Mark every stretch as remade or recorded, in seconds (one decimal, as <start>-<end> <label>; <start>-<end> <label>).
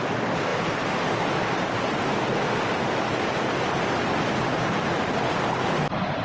0.0-6.2 recorded